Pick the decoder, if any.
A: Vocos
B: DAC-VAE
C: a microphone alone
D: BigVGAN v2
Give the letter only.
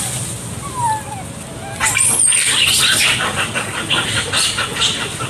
C